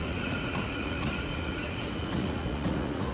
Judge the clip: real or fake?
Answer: fake